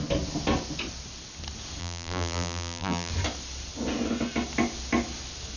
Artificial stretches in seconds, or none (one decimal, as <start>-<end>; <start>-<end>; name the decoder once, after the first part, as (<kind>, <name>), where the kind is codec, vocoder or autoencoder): 1.8-3.1 (vocoder, BigVGAN v2)